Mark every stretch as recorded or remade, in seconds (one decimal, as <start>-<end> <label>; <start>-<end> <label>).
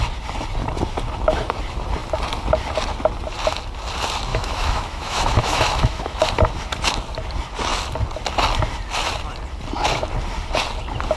0.0-4.3 recorded; 4.3-6.2 remade; 6.2-11.2 recorded